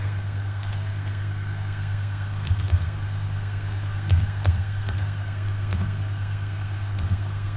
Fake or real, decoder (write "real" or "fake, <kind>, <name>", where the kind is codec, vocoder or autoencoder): fake, codec, SNAC